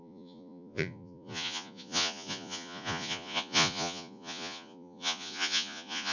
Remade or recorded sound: remade